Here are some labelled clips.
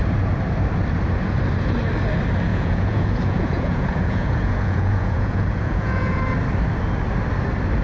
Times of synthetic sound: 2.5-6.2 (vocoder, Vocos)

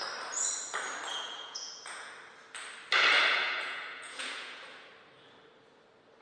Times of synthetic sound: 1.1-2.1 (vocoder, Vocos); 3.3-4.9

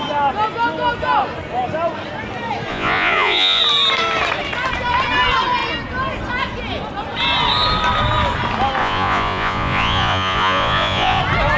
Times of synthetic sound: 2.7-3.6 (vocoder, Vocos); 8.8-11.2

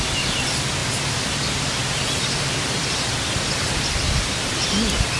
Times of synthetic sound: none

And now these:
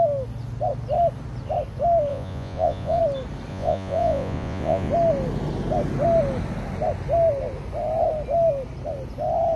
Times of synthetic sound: 2.1-3.0 (vocoder, Vocos); 3.5-4.9